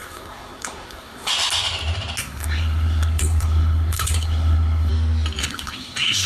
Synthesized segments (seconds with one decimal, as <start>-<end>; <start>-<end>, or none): 0.0-1.3; 2.2-4.9; 5.4-6.3